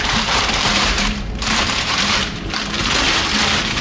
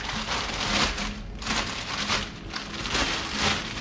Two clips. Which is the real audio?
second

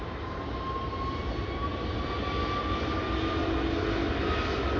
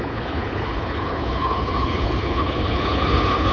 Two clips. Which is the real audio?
first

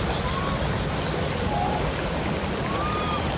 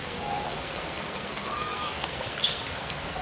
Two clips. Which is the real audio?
first